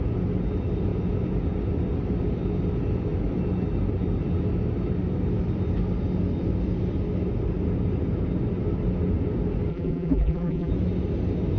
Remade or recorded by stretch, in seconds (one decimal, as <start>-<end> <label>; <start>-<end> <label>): 0.0-9.7 recorded; 9.7-10.7 remade; 10.7-11.6 recorded

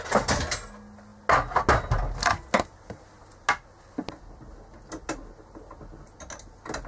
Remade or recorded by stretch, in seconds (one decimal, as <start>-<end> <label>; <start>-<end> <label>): 0.0-6.9 recorded

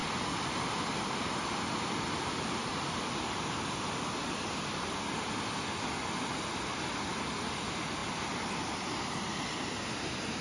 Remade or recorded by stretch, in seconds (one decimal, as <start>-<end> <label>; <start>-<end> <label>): 0.0-4.1 remade; 4.1-10.4 recorded

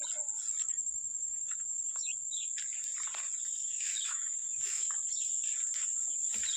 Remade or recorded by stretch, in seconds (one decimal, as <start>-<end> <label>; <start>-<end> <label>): 0.0-0.6 recorded; 0.6-2.5 remade; 2.5-3.6 recorded; 3.6-4.9 remade; 4.9-6.6 recorded

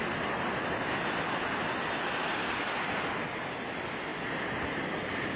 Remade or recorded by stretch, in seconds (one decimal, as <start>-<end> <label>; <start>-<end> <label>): 0.0-5.4 recorded